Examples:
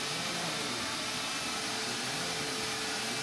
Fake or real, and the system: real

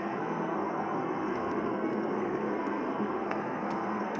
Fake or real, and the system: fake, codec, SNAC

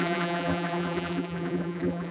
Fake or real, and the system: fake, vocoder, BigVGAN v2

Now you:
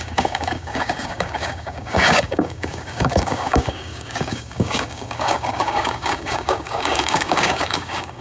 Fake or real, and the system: fake, codec, DAC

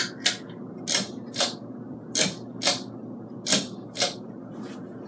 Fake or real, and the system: real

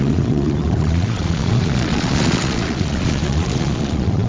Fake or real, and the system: fake, vocoder, Vocos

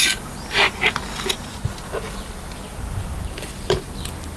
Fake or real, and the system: real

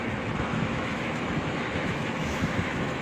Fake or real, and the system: fake, autoencoder, DAC-VAE